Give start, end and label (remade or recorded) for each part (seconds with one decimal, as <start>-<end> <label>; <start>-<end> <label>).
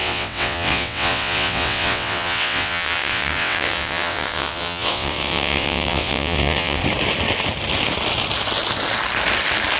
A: 0.0-6.8 remade; 6.8-9.8 recorded